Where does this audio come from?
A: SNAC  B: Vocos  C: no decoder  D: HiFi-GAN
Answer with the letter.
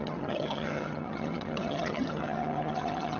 D